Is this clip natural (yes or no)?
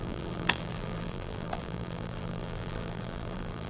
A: no